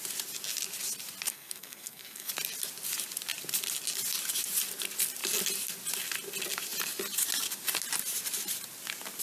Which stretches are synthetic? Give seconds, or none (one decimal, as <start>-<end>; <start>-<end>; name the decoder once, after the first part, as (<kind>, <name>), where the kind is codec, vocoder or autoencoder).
1.3-2.3 (codec, SNAC)